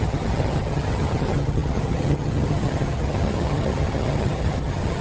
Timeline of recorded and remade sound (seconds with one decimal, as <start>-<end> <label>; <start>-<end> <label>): 0.0-5.0 remade